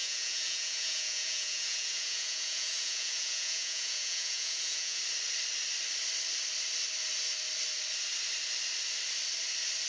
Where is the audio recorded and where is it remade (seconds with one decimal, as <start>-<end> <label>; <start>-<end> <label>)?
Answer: 0.0-5.0 remade; 5.0-9.9 recorded